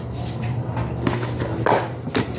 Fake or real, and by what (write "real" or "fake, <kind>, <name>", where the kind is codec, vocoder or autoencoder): real